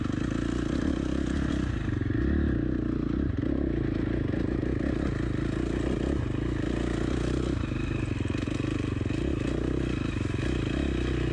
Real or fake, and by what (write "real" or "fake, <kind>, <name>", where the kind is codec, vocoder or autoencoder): real